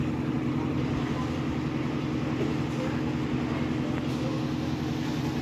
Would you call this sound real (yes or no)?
yes